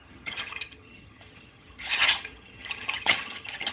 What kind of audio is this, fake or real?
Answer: fake